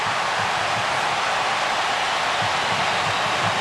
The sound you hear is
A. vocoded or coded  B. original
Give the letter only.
B